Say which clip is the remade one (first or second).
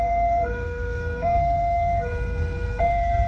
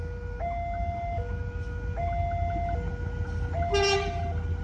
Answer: first